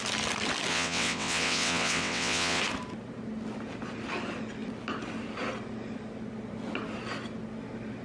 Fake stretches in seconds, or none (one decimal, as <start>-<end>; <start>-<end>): 0.7-2.6

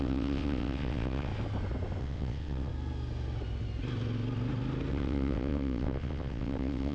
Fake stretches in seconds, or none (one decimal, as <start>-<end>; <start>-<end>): 0.0-1.3; 2.0-2.7; 4.9-6.9

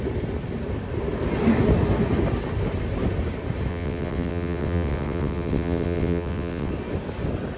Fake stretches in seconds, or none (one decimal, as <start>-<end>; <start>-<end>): 3.7-6.7

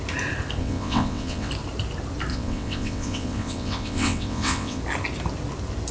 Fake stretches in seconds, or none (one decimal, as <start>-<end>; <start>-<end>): 0.6-1.5; 2.3-4.8

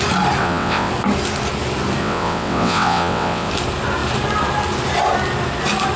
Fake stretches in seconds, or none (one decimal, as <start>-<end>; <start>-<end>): 0.4-0.9; 2.0-3.5